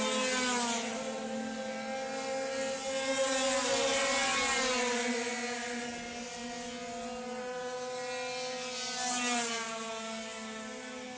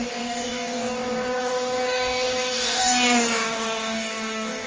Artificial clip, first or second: second